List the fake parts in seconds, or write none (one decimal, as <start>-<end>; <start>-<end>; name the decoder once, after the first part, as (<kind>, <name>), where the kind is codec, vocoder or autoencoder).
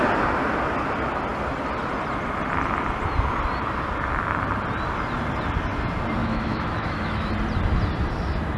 6.2-7.3 (autoencoder, DAC-VAE)